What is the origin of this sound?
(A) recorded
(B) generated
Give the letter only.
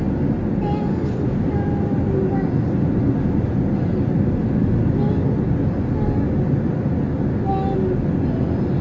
A